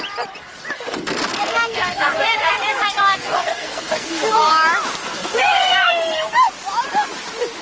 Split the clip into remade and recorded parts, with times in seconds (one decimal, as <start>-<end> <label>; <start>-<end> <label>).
0.0-1.3 recorded; 1.3-4.5 remade; 4.5-5.0 recorded; 5.0-6.5 remade; 6.5-7.6 recorded